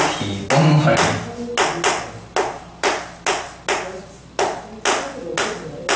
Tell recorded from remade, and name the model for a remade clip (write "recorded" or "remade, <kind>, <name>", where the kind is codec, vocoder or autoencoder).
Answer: recorded